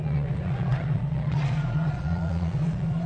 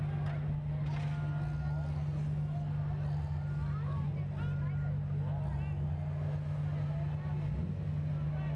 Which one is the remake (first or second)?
first